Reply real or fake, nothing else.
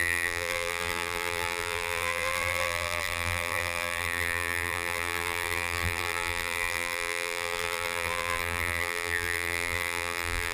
fake